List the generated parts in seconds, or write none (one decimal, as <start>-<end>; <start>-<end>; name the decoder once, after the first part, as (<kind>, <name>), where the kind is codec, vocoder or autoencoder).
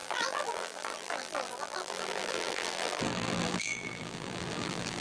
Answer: 0.0-5.0 (vocoder, BigVGAN v2)